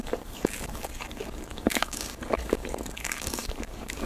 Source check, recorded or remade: remade